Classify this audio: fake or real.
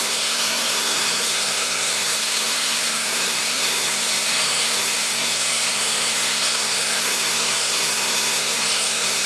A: fake